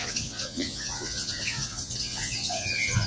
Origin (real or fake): fake